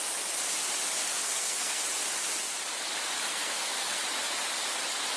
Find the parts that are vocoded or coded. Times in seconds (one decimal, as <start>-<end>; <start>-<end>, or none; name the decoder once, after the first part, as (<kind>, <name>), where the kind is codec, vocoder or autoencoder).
1.0-1.8 (codec, SNAC); 3.3-4.0